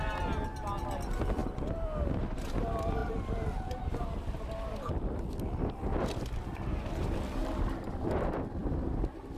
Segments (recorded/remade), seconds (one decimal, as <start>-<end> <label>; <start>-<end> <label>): 0.0-3.0 recorded; 3.0-4.9 remade; 4.9-7.4 recorded; 7.4-8.1 remade; 8.1-8.6 recorded; 8.6-9.4 remade